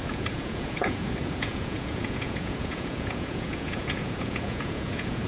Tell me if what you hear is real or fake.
fake